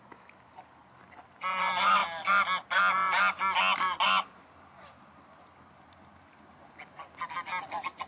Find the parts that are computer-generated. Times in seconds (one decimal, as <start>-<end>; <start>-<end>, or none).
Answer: none